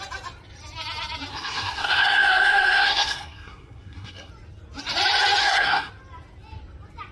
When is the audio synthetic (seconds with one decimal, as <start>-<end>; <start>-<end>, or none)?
1.3-4.3; 5.4-5.9